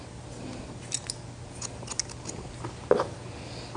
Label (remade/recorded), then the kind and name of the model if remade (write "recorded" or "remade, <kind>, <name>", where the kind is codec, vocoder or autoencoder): recorded